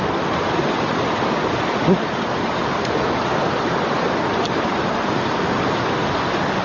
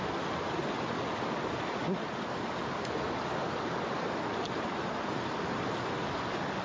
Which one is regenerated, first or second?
first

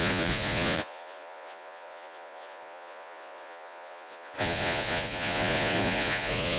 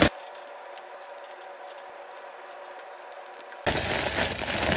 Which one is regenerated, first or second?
first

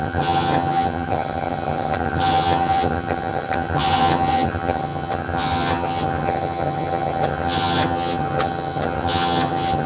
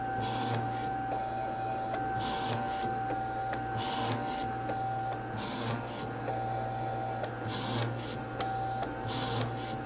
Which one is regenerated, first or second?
first